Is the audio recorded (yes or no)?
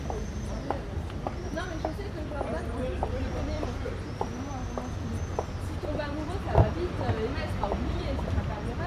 no